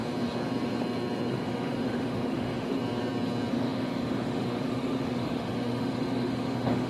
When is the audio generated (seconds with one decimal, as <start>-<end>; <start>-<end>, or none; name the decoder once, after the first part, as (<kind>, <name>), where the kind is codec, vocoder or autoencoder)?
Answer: 1.3-2.8 (autoencoder, DAC-VAE); 3.5-6.9